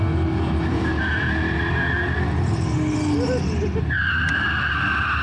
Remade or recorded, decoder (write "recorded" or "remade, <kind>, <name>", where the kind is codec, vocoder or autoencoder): recorded